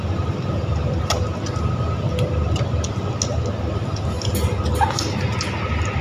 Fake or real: real